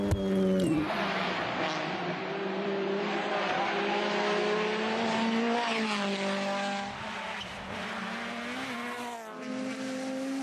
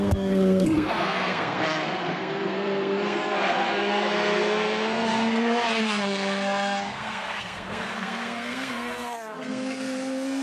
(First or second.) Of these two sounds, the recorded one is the first